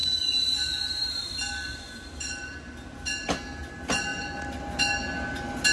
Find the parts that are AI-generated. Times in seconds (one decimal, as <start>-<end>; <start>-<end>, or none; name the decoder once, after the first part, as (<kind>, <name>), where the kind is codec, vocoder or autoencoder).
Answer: 0.0-2.2 (vocoder, BigVGAN v2)